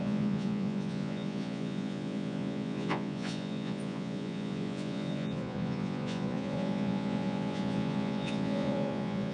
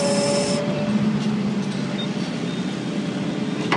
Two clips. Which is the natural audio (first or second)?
second